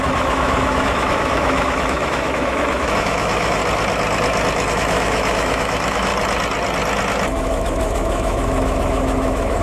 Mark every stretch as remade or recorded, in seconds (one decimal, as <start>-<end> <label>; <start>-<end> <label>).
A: 0.0-3.6 remade; 3.6-4.7 recorded; 4.7-6.1 remade; 6.1-7.3 recorded; 7.3-9.6 remade